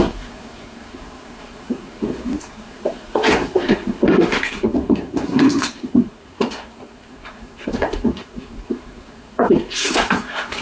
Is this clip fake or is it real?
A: fake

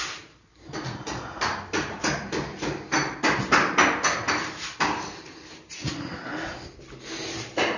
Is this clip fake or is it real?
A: real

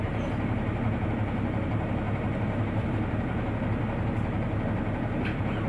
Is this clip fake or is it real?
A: real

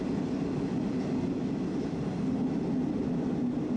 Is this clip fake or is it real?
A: real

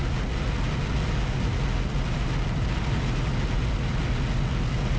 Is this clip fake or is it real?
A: real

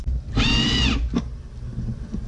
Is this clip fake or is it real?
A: real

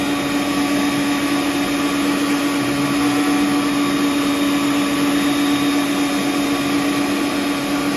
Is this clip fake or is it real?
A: real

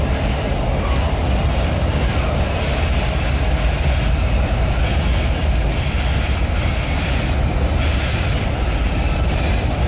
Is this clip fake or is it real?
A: real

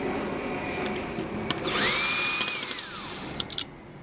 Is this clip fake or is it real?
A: real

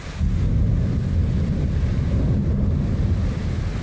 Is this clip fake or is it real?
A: real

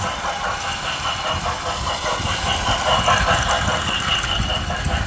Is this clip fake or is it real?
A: real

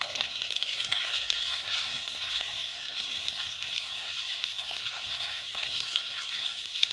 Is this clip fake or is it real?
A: fake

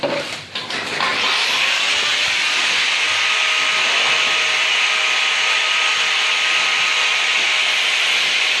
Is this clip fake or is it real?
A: real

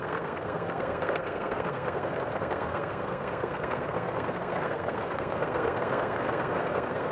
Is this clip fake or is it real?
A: fake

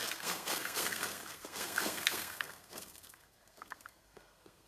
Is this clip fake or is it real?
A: fake